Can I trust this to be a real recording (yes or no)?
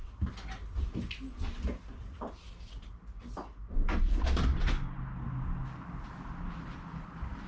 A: yes